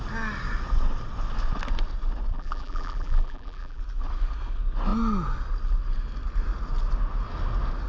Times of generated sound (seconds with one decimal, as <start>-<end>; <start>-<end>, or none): 2.3-3.8